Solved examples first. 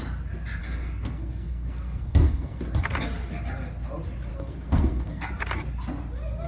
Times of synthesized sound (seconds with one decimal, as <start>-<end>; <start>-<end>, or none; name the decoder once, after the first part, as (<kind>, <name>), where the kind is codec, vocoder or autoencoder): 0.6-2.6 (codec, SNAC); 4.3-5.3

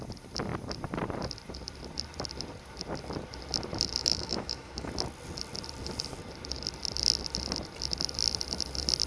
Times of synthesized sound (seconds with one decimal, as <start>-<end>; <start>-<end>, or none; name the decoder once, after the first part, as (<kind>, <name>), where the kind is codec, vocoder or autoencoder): 4.0-4.9 (autoencoder, DAC-VAE)

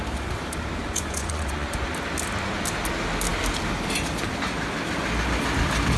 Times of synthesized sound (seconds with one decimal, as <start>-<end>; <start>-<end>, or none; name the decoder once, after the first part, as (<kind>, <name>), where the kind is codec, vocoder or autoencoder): 0.8-1.9 (vocoder, Vocos)